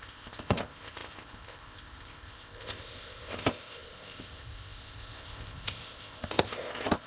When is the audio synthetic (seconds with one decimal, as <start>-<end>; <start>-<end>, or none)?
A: 0.0-7.1